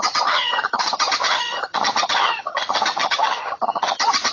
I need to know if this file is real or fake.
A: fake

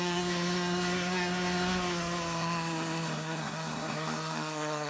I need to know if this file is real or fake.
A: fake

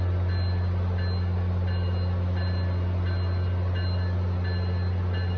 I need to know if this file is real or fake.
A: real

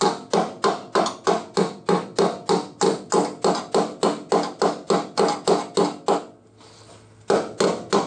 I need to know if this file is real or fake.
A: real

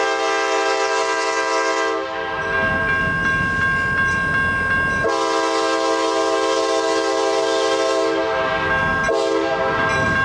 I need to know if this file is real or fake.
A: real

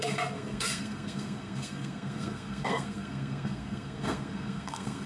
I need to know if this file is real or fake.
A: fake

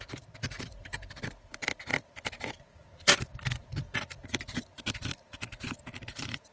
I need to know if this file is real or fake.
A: fake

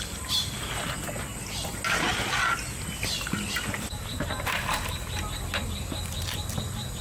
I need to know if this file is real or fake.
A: real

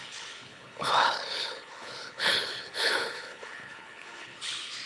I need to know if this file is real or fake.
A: fake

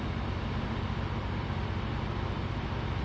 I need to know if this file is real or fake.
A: real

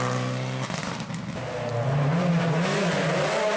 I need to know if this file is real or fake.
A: real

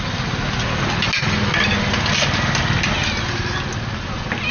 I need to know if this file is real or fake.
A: real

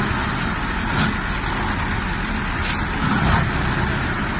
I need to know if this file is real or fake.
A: real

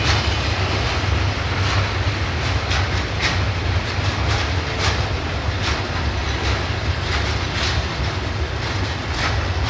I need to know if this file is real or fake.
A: real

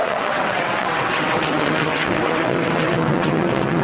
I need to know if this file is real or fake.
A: fake